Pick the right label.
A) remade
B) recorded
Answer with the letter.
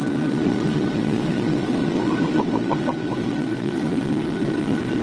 A